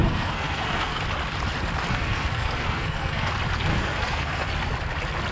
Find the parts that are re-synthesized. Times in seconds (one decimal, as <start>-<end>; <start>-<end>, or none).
0.0-1.0; 1.9-3.3; 3.7-4.5